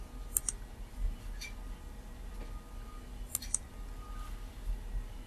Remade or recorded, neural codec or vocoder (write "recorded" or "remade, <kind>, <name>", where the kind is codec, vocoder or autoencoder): recorded